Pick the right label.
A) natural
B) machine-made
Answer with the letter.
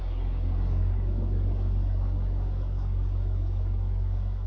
B